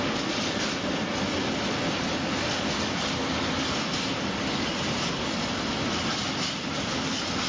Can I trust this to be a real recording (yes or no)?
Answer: yes